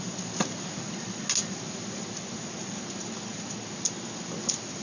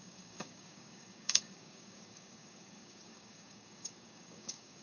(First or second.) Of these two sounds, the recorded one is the first